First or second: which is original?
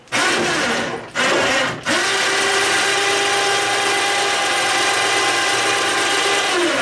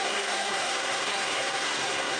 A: first